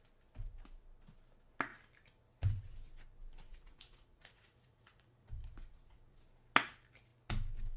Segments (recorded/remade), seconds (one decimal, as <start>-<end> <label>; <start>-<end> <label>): 0.0-3.5 recorded; 3.5-6.2 remade; 6.2-7.8 recorded